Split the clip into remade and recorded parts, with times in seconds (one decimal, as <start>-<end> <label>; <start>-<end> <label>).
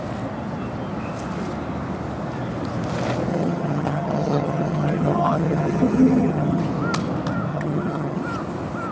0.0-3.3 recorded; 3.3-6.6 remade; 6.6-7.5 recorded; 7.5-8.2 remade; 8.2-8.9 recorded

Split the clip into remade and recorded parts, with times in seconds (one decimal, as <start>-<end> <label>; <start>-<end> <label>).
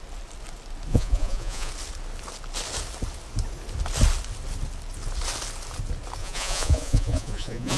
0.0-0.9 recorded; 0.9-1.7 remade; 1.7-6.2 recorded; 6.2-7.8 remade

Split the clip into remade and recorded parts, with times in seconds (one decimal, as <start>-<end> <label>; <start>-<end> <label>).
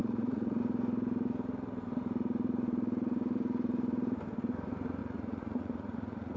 0.0-0.6 remade; 0.6-5.0 recorded; 5.0-6.4 remade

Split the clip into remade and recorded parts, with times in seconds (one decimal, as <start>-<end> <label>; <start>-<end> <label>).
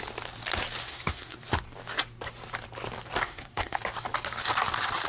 0.0-0.8 recorded; 0.8-1.4 remade; 1.4-3.2 recorded; 3.2-3.8 remade; 3.8-5.1 recorded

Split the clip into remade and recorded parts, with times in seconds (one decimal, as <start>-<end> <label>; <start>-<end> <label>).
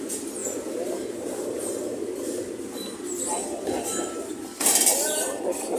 0.0-5.8 remade